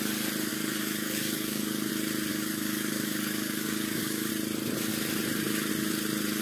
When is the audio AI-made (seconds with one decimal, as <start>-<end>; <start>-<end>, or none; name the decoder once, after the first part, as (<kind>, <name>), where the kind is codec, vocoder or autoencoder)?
0.5-1.9 (codec, DAC); 2.3-4.3